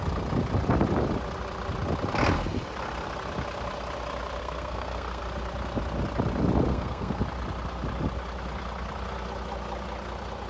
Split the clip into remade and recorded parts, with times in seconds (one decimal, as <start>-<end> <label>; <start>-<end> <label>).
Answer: 0.0-4.4 recorded; 4.4-5.2 remade; 5.2-6.7 recorded; 6.7-7.2 remade; 7.2-10.5 recorded